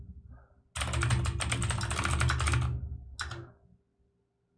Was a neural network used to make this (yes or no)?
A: no